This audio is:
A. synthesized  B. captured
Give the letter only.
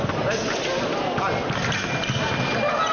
B